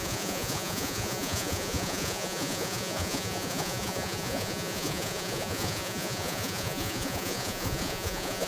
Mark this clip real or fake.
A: fake